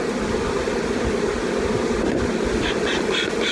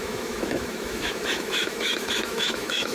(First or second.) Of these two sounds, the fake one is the second